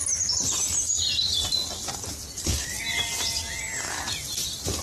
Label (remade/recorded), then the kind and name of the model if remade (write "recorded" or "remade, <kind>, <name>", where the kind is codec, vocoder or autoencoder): recorded